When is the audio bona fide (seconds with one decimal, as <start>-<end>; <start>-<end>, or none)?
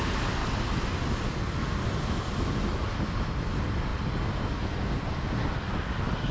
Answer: 0.0-6.3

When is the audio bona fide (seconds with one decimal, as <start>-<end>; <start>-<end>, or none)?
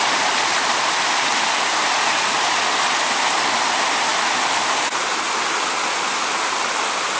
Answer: 0.0-7.2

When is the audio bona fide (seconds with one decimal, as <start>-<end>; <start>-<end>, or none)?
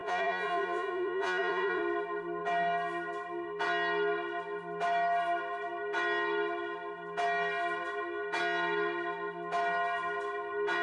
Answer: 1.8-10.8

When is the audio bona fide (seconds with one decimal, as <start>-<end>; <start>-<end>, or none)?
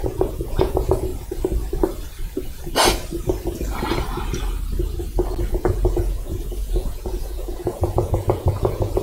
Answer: 1.1-5.4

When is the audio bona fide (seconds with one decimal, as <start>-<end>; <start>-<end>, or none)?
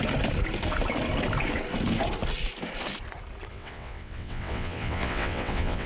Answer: 0.0-3.5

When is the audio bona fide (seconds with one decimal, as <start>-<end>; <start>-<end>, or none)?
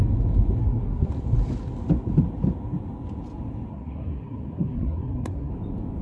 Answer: 0.0-0.6; 1.1-3.7; 5.5-6.0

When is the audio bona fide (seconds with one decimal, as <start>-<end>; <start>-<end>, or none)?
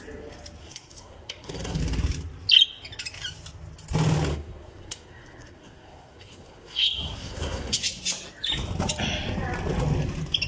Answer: 0.0-0.6; 1.8-4.3; 7.8-10.5